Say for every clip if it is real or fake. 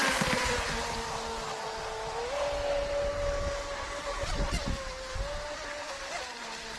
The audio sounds real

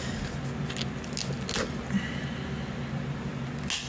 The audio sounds real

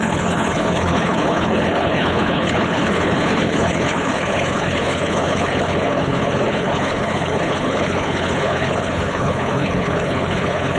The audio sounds fake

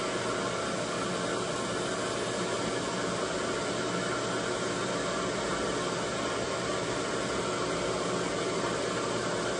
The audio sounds real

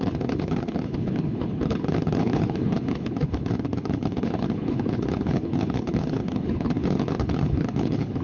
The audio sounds fake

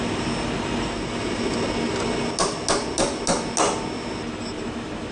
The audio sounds real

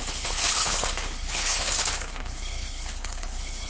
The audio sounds fake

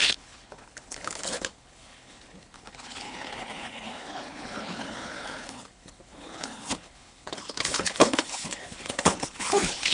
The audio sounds fake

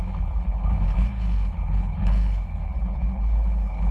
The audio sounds fake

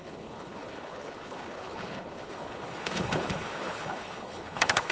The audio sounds fake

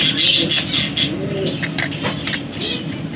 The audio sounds real